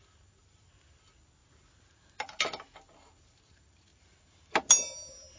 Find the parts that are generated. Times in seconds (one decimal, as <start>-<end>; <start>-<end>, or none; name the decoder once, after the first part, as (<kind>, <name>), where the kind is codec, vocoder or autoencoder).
none